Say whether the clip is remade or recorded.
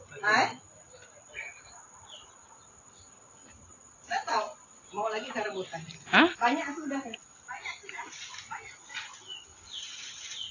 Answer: recorded